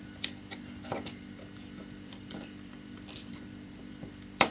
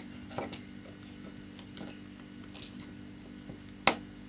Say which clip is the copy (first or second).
first